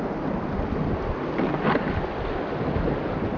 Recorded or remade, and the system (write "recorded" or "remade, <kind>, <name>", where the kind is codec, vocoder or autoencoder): recorded